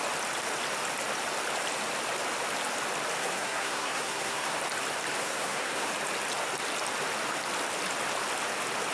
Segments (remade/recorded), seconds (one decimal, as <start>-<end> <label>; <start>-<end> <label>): 0.0-3.2 recorded; 3.2-4.6 remade; 4.6-5.2 recorded; 5.2-5.9 remade; 5.9-8.9 recorded